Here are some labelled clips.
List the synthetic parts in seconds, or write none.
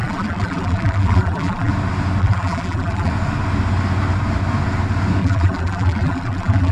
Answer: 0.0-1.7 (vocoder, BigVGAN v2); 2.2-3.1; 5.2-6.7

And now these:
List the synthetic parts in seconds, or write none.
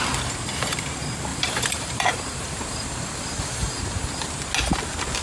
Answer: 1.3-4.3 (vocoder, BigVGAN v2)